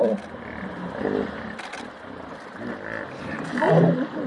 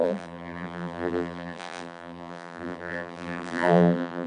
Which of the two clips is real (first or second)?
first